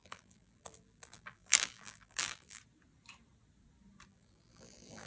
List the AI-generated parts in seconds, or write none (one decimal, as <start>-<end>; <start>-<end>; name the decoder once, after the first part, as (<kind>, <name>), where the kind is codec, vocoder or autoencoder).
0.0-2.6 (vocoder, BigVGAN v2); 4.1-5.1

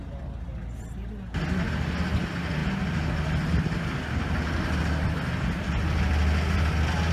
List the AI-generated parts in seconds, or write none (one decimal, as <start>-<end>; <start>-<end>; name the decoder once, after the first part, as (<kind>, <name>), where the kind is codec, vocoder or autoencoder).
none

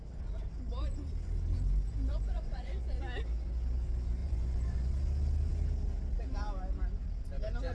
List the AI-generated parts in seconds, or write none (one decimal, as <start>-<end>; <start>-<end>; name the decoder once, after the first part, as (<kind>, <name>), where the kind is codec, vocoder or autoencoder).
2.1-3.0 (vocoder, Vocos); 4.2-4.9

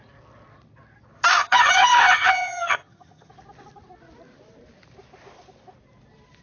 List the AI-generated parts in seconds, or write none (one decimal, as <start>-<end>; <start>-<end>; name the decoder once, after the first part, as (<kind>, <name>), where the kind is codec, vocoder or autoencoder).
1.4-3.3 (vocoder, HiFi-GAN)